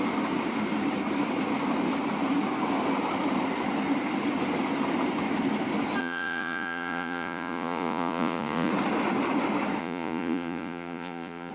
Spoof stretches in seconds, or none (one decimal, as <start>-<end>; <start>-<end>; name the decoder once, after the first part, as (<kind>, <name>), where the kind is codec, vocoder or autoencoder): 6.0-8.7 (vocoder, Vocos); 9.8-11.5